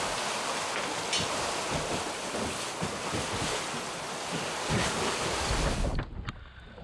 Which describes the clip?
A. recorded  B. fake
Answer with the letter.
A